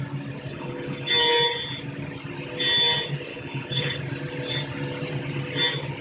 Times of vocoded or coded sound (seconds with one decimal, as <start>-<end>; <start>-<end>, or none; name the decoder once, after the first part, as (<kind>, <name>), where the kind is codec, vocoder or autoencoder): 0.5-1.1 (codec, HILCodec); 3.3-4.0